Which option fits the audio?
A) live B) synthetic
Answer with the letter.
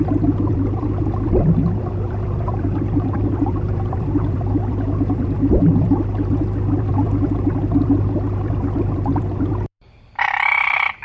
B